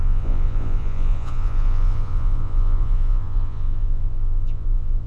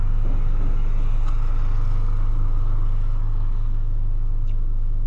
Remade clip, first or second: first